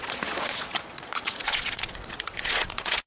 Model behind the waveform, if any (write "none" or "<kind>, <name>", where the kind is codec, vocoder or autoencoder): vocoder, Vocos